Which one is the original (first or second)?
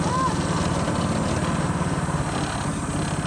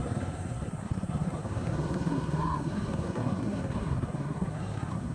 first